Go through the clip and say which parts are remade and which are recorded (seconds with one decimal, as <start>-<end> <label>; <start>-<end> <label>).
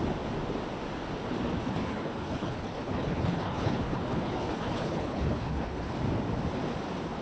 0.0-1.6 recorded; 1.6-5.9 remade; 5.9-7.2 recorded